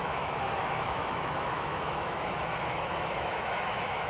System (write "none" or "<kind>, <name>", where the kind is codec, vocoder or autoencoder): autoencoder, DAC-VAE